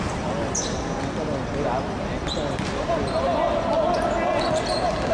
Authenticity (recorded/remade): recorded